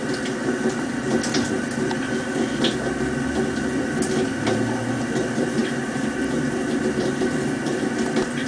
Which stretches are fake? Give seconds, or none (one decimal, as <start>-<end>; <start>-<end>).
none